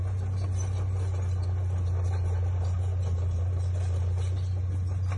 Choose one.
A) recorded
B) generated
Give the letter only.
A